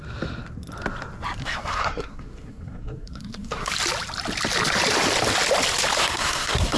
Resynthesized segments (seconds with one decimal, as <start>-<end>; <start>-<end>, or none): 1.4-3.7; 6.0-6.8